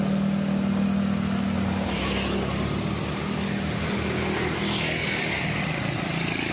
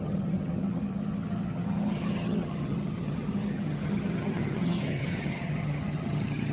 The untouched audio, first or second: first